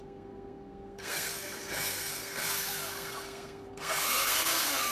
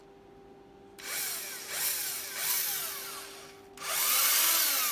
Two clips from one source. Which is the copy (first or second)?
first